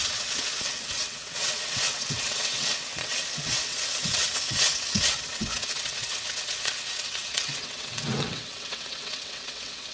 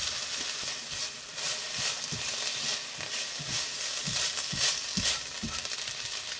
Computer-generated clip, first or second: first